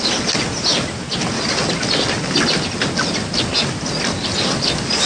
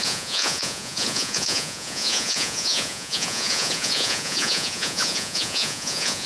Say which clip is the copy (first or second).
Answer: second